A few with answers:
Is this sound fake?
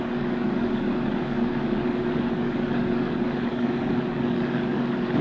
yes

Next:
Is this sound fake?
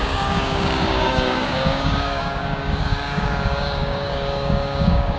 yes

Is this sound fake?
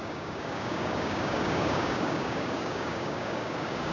yes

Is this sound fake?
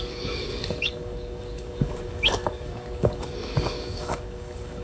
yes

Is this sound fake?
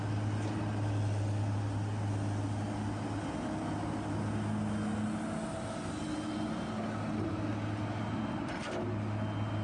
no